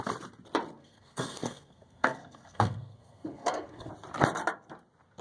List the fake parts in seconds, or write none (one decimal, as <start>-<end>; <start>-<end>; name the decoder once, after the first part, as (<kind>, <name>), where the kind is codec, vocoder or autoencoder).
0.8-3.9 (codec, SNAC)